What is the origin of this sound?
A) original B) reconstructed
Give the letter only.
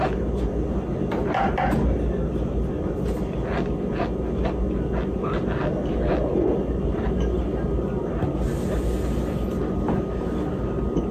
A